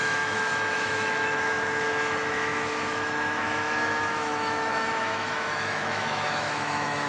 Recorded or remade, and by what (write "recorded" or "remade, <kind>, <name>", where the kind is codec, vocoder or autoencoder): remade, autoencoder, DAC-VAE